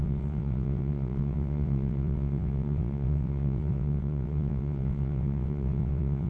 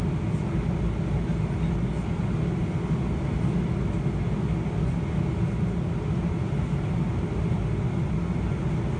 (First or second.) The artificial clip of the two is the first